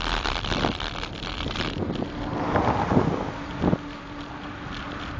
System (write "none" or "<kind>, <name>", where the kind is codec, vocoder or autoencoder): none